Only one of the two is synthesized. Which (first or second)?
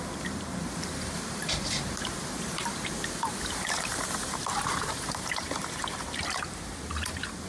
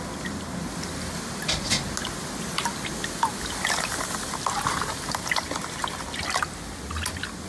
first